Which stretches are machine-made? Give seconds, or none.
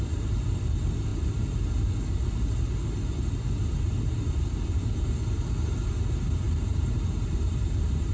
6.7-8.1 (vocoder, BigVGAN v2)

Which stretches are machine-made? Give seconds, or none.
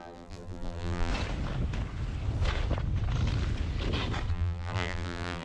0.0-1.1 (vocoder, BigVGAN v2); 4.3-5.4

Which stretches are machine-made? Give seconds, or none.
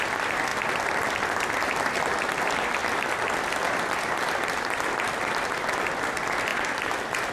none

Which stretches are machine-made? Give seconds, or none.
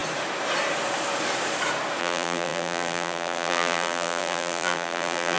2.0-5.4 (vocoder, BigVGAN v2)